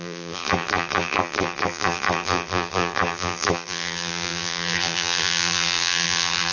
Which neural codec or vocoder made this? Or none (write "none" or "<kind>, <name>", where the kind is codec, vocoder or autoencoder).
vocoder, BigVGAN v2